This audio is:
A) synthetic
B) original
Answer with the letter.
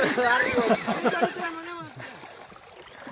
B